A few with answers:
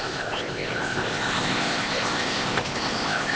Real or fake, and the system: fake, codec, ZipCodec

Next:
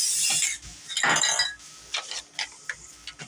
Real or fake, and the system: real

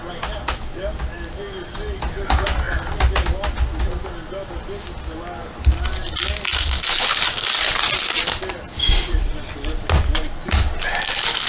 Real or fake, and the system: real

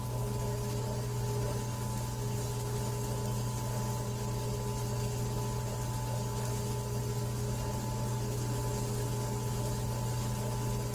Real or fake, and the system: real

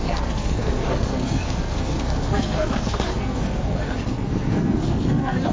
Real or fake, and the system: fake, codec, SNAC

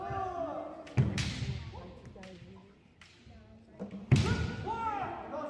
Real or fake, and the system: real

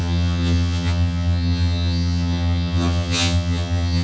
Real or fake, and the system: fake, vocoder, HiFi-GAN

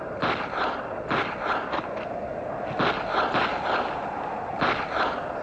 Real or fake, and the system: real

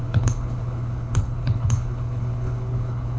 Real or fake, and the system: fake, codec, HILCodec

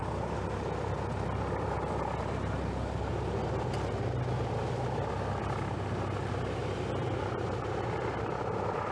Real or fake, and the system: real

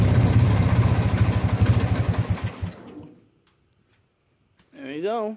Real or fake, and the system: real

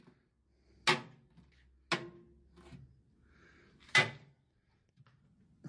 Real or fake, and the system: real